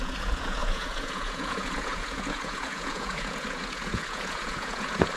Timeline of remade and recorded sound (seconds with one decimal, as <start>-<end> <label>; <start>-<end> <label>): 0.0-5.2 remade